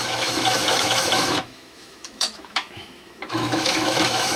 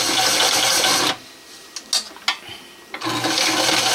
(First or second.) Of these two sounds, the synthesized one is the first